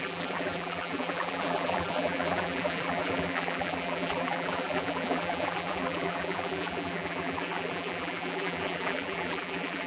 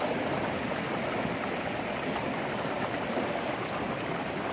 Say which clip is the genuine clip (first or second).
second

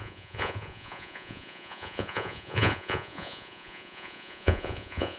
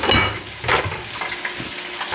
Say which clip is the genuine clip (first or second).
second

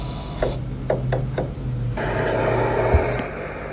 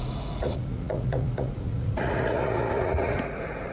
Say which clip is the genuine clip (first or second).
first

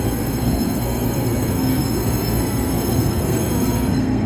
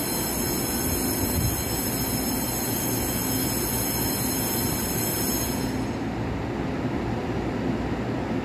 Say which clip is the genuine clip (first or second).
second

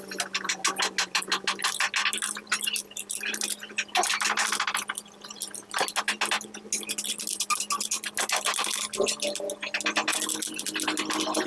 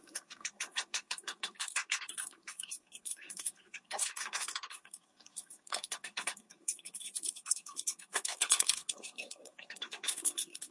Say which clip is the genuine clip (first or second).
first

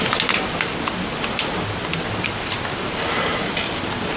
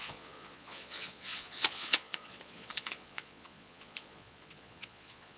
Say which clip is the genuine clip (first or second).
first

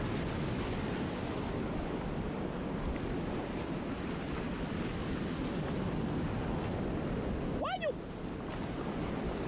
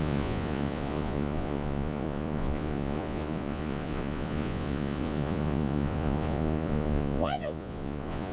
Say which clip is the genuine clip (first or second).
first